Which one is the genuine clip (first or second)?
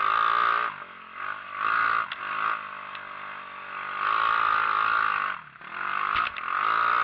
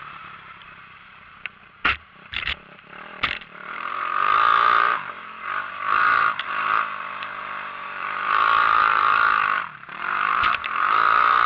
first